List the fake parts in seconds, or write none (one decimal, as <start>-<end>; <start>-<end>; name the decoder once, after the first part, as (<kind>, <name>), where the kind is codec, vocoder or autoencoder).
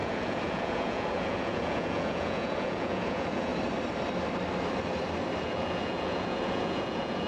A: 0.0-3.5 (vocoder, Vocos); 5.4-7.3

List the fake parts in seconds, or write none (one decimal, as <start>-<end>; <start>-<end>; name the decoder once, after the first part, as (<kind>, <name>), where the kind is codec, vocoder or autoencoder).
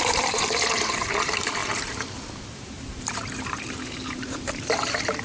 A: 0.0-5.2 (vocoder, BigVGAN v2)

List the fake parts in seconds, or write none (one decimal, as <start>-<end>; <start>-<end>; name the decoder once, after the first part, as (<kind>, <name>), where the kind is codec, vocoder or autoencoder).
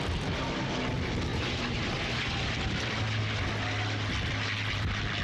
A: 1.3-2.5 (vocoder, BigVGAN v2)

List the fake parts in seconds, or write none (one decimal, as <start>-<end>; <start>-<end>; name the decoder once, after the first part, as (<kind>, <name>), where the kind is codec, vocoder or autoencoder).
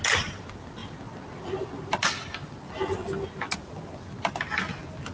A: none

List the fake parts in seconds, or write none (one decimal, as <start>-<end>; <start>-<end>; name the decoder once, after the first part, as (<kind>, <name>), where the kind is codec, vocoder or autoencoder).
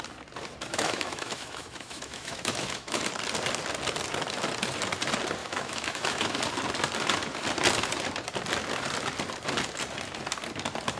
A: 0.7-3.1 (autoencoder, DAC-VAE); 5.4-6.4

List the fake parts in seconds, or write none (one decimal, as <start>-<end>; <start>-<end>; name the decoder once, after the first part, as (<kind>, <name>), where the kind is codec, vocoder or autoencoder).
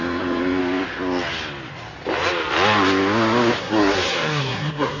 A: 0.0-0.6 (codec, SNAC); 3.6-5.0